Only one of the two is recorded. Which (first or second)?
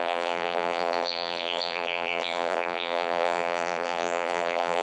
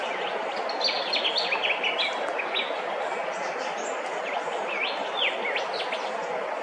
second